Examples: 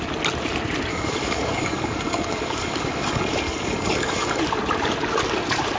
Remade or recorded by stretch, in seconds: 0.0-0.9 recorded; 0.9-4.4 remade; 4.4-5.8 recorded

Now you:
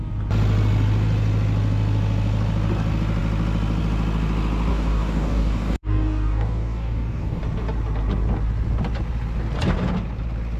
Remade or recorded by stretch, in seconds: 0.0-4.7 recorded; 4.7-7.4 remade; 7.4-10.6 recorded

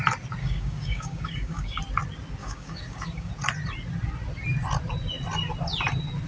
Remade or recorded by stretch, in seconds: 0.0-0.4 recorded; 0.4-1.8 remade; 1.8-2.4 recorded; 2.4-3.3 remade; 3.3-6.3 recorded